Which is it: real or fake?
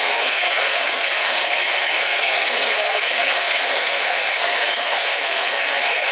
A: fake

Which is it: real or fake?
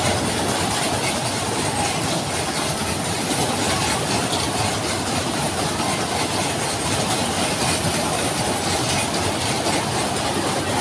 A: real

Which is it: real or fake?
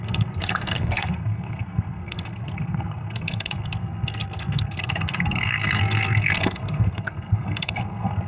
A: fake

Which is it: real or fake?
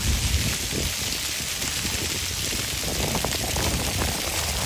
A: real